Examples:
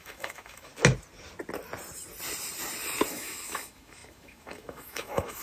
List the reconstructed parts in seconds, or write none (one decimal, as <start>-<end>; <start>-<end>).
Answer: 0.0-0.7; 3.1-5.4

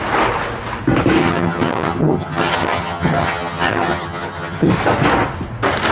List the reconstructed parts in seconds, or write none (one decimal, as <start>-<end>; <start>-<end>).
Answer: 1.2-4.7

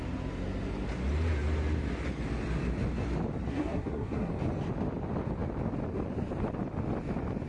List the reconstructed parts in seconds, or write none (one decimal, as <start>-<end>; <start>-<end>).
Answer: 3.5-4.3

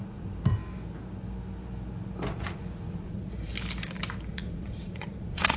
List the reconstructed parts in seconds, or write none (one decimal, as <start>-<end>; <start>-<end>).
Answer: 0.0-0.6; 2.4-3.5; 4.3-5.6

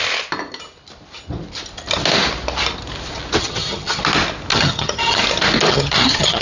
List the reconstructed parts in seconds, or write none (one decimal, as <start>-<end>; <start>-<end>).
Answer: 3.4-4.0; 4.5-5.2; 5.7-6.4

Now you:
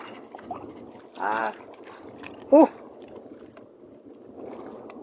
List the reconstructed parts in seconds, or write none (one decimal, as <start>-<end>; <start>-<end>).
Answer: none